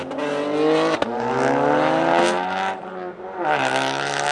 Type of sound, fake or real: real